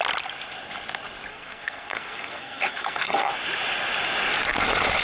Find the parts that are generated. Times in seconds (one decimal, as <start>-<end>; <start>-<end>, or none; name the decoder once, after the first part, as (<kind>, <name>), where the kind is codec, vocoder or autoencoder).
1.3-3.3 (codec, SNAC)